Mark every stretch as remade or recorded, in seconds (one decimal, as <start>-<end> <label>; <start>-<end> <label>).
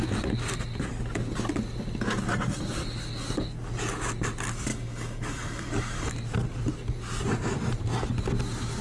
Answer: 0.0-4.7 recorded; 4.7-6.1 remade; 6.1-8.8 recorded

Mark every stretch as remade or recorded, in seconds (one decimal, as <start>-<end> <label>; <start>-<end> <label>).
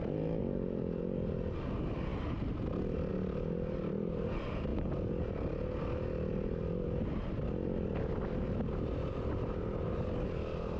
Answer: 0.0-10.8 recorded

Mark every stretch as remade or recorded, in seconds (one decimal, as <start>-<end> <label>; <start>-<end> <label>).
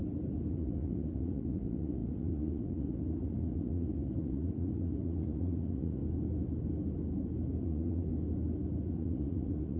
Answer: 0.0-0.5 recorded; 0.5-6.0 remade; 6.0-7.6 recorded; 7.6-8.1 remade; 8.1-8.9 recorded; 8.9-9.8 remade